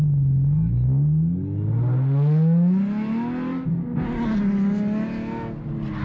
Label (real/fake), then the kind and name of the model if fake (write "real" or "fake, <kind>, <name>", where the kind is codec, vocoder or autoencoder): real